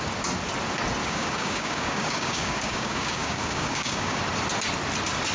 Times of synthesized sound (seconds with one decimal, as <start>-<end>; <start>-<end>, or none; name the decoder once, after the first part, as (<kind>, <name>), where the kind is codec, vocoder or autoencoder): 1.0-4.2 (codec, DAC)